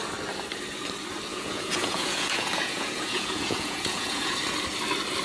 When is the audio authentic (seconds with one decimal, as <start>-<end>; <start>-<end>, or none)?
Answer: 0.0-1.3; 4.4-5.2